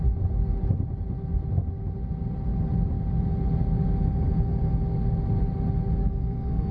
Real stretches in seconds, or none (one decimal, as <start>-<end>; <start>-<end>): 0.0-6.0

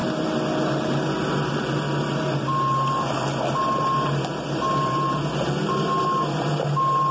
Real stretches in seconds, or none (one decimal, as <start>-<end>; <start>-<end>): 0.0-7.1

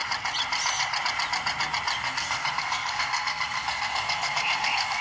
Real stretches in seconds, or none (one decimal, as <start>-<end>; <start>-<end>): 0.0-2.0

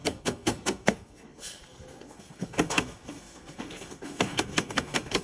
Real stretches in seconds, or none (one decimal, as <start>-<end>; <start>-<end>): none

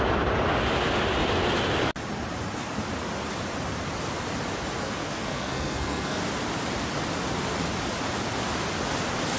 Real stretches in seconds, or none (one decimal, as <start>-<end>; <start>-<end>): 0.0-4.8; 6.2-9.4

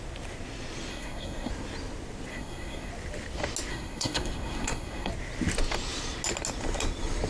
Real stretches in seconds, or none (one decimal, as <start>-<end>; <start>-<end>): 0.0-0.9; 1.5-2.3; 2.9-3.7; 5.1-7.3